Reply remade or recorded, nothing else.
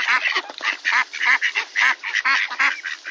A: recorded